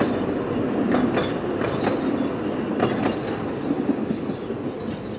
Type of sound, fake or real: real